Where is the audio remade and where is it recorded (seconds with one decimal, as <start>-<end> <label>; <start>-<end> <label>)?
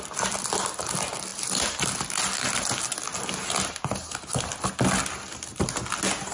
0.0-6.3 recorded